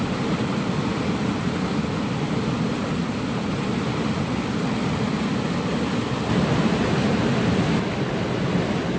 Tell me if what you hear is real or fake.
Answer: real